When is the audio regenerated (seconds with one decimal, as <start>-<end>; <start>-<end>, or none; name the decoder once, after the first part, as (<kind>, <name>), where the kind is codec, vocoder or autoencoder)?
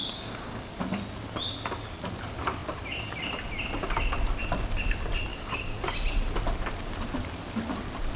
0.0-0.8 (codec, DAC); 5.3-5.8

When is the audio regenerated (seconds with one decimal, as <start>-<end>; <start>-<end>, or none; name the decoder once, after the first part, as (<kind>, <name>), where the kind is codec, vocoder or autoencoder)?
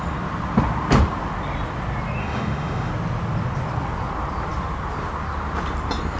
2.2-2.9 (autoencoder, DAC-VAE)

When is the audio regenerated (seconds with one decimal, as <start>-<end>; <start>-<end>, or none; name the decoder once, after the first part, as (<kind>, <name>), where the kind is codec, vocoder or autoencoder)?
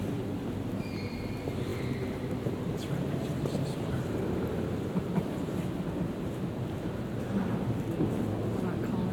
1.7-5.5 (vocoder, BigVGAN v2)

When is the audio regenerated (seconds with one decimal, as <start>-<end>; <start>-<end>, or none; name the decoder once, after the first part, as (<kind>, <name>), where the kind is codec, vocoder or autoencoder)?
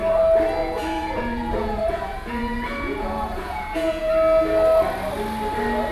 0.6-4.1 (vocoder, Vocos)